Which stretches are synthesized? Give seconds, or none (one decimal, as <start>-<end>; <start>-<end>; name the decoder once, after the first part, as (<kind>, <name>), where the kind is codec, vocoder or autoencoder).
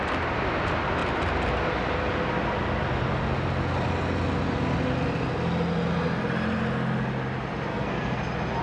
7.7-8.2 (codec, SNAC)